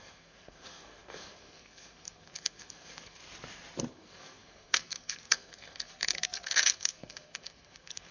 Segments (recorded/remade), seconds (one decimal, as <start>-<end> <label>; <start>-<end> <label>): 0.0-3.2 remade; 3.2-3.9 recorded; 3.9-8.1 remade